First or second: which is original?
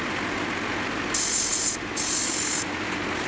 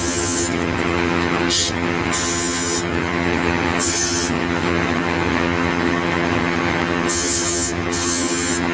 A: first